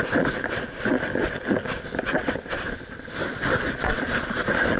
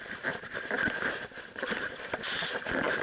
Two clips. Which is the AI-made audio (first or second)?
second